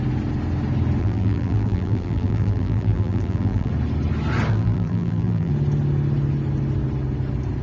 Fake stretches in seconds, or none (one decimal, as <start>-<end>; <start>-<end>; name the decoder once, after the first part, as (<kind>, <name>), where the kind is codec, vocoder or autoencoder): 1.0-3.7 (vocoder, BigVGAN v2); 4.5-5.5

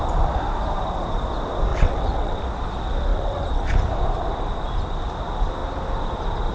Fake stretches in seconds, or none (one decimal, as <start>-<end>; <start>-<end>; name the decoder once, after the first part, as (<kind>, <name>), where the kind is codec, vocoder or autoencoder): 1.7-2.4 (vocoder, WaveNeXt); 3.1-3.7

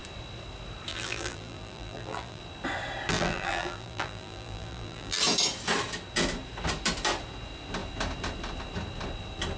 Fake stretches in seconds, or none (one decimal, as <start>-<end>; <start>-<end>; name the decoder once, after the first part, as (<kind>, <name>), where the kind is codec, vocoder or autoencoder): 0.9-2.4 (vocoder, BigVGAN v2); 3.1-5.2

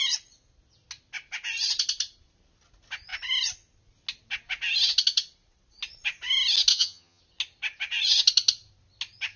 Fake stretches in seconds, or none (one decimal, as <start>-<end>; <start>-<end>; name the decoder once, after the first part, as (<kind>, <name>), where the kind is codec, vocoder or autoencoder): 6.7-7.2 (vocoder, HiFi-GAN)

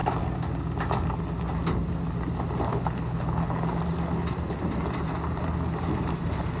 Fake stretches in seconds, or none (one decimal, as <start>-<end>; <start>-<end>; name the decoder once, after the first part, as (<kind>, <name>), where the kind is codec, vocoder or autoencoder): 2.7-3.6 (codec, HILCodec)

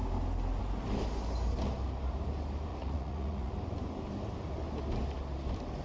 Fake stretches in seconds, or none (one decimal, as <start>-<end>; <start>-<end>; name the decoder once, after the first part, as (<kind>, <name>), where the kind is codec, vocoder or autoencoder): 2.7-3.5 (vocoder, Vocos)

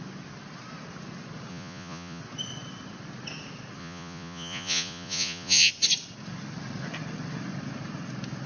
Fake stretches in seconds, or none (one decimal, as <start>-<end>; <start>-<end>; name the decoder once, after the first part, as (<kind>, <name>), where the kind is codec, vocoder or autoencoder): 1.5-2.2 (vocoder, Vocos); 3.8-5.7